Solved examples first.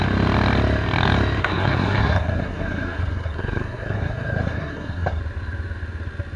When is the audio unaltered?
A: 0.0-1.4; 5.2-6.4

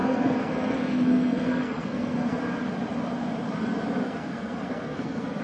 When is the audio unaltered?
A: 2.4-4.0